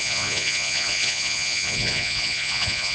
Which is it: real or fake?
fake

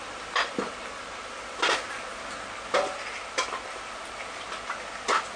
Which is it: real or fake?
real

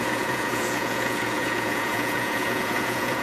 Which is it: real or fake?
fake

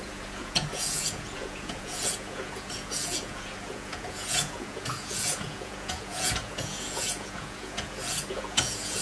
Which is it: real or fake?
fake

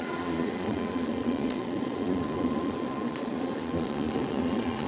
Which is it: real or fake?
fake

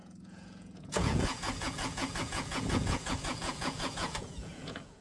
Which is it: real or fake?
fake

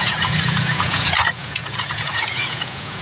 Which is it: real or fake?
fake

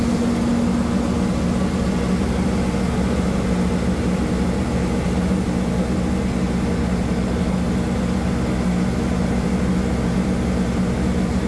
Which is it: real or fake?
real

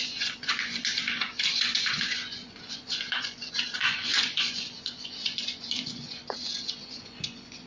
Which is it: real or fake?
fake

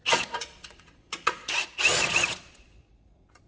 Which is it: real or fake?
fake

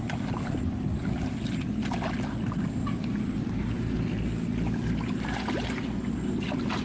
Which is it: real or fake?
real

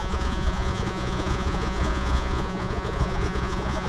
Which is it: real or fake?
fake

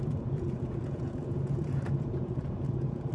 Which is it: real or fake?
fake